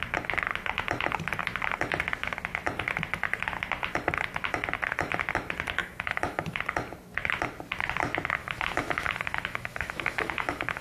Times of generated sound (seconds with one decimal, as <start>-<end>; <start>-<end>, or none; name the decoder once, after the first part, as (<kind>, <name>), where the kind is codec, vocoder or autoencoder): 5.8-6.6 (autoencoder, DAC-VAE); 8.4-10.8